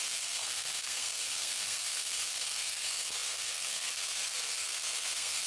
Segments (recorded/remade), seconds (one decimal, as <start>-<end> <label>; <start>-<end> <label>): 0.0-5.5 remade